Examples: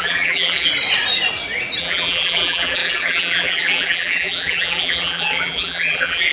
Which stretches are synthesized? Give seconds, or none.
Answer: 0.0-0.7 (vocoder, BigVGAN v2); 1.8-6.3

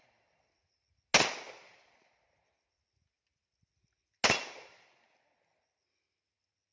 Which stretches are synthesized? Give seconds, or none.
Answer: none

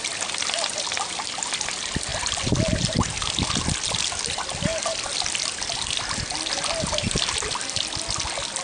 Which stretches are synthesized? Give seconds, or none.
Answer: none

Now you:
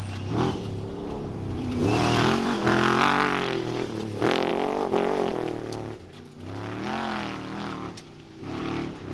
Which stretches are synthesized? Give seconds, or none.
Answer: 1.0-4.5 (vocoder, BigVGAN v2)

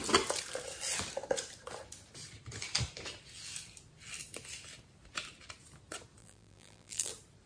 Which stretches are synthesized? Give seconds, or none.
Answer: 6.2-7.1 (vocoder, BigVGAN v2)

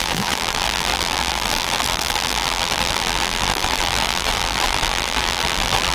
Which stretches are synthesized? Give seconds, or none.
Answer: 0.0-5.9 (vocoder, BigVGAN v2)

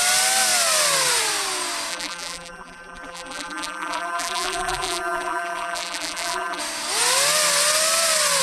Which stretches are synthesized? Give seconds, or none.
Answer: 1.9-6.6 (vocoder, BigVGAN v2)